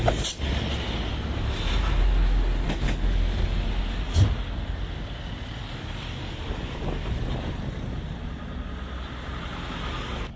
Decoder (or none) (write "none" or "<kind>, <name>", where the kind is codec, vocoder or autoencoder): none